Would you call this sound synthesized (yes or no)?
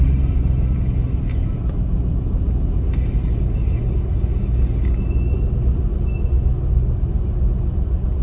no